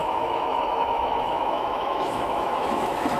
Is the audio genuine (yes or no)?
no